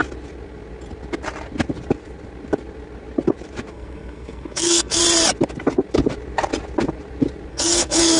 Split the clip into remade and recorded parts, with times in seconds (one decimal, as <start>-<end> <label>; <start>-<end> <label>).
0.0-3.7 recorded; 3.7-5.0 remade; 5.0-7.5 recorded; 7.5-8.2 remade